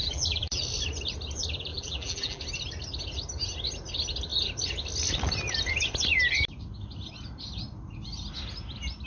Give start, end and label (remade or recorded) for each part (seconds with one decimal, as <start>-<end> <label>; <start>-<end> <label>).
0.0-0.6 remade; 0.6-1.7 recorded; 1.7-2.4 remade; 2.4-9.1 recorded